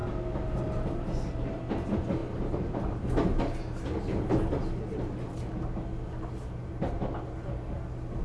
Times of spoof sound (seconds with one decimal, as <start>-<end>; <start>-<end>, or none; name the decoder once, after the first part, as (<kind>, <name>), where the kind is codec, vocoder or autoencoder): none